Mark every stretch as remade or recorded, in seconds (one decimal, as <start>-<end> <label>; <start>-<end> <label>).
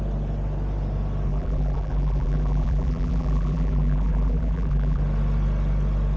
0.0-1.3 recorded; 1.3-5.0 remade; 5.0-6.2 recorded